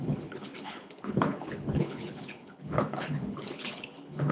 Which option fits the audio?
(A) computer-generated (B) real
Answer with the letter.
A